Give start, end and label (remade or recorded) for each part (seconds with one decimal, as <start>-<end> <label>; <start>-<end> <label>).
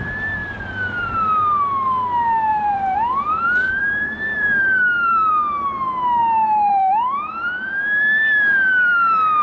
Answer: 0.0-0.4 recorded; 0.4-1.6 remade; 1.6-2.5 recorded; 2.5-5.3 remade; 5.3-6.2 recorded; 6.2-9.4 remade